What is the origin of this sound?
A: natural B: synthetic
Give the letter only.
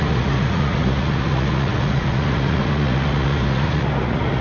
B